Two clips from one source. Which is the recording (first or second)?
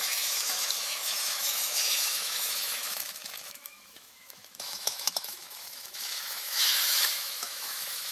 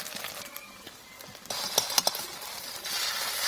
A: second